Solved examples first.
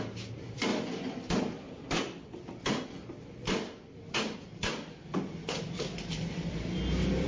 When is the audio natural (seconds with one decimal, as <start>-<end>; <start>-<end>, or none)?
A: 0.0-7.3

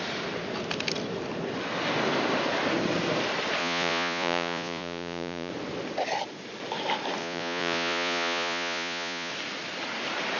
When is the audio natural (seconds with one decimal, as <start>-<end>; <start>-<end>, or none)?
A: 0.0-3.6; 5.5-7.2; 9.3-10.4

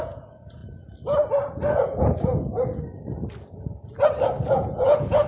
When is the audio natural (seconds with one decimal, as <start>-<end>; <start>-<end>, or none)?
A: 0.6-2.0; 2.5-4.4

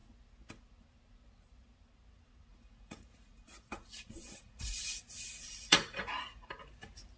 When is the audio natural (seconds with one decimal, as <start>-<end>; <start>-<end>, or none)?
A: 0.0-2.5; 6.5-7.2